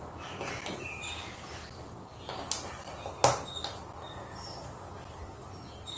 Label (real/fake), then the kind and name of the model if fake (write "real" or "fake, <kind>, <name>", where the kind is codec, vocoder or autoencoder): real